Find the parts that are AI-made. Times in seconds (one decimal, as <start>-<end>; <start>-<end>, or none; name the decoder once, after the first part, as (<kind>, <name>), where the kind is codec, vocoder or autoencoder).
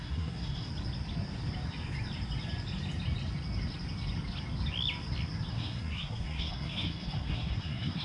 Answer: 0.0-0.7 (codec, SNAC); 5.5-8.0